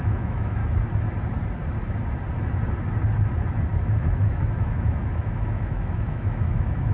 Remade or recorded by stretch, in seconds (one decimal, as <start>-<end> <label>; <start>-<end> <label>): 0.0-0.6 remade; 0.6-3.8 recorded; 3.8-6.9 remade